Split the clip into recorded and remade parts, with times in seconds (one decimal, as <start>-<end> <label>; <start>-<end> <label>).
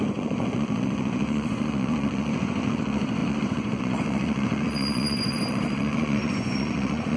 0.0-7.2 remade